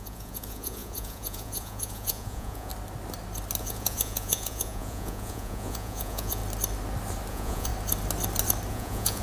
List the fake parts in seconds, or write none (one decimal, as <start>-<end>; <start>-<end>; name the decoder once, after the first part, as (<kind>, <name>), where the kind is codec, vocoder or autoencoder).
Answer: 0.0-2.7 (vocoder, Vocos); 3.6-6.4; 7.3-7.7; 8.7-9.2